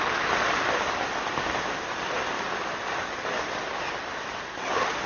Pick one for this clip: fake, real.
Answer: real